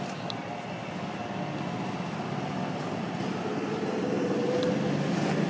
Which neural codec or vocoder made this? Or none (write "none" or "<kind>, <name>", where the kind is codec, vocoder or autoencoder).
none